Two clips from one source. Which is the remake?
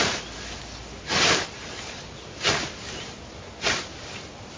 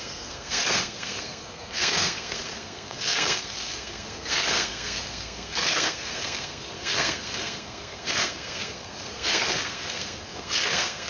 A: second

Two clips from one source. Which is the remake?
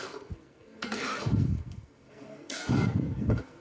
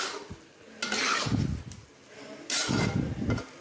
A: first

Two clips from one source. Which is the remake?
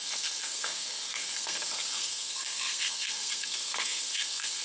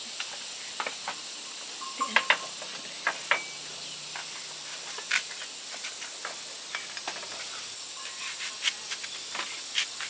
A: first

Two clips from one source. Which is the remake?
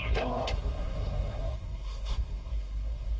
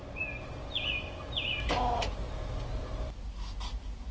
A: first